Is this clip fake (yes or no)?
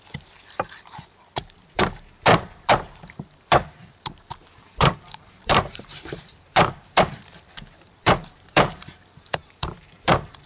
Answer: yes